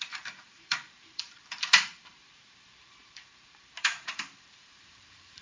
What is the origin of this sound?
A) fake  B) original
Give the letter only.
A